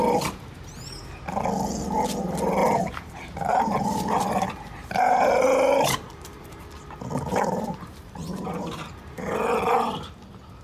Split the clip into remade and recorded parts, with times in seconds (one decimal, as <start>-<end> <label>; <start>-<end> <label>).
0.0-2.6 recorded; 2.6-6.6 remade; 6.6-7.3 recorded; 7.3-9.3 remade; 9.3-10.6 recorded